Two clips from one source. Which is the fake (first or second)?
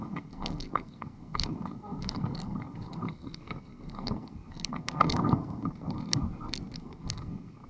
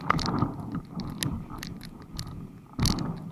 first